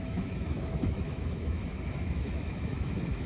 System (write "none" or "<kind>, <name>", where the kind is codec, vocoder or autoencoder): autoencoder, DAC-VAE